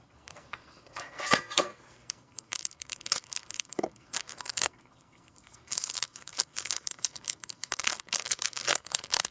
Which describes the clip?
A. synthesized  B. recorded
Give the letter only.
A